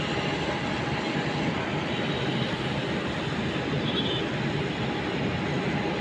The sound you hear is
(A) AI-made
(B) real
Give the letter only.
B